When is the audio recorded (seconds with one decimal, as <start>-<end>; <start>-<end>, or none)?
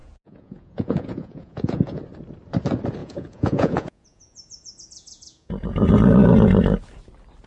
2.0-3.0; 5.5-7.5